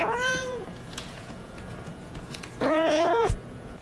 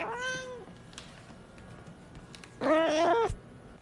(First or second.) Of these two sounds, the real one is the second